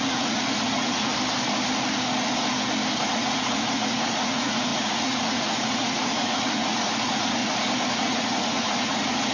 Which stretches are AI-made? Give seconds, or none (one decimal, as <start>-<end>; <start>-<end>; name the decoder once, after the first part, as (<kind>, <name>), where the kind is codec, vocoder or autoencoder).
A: 0.0-1.1 (vocoder, Vocos); 3.1-7.4; 7.9-9.3